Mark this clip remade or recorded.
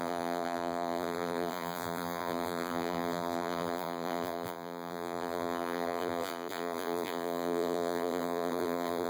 remade